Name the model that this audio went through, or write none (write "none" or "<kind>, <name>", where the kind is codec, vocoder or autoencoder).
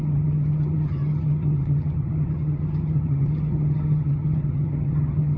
vocoder, HiFi-GAN